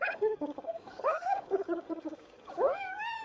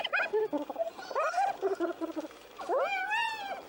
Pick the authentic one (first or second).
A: second